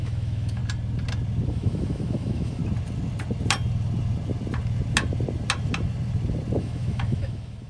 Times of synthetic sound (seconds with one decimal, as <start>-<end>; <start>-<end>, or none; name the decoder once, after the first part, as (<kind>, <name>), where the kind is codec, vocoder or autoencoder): 0.0-0.6 (autoencoder, DAC-VAE); 1.5-2.6; 6.6-7.7